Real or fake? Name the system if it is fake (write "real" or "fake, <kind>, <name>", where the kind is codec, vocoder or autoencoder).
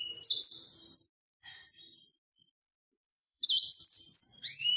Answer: fake, vocoder, BigVGAN v2